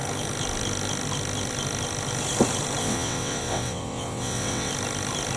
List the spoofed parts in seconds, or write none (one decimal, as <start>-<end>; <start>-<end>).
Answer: 2.8-4.7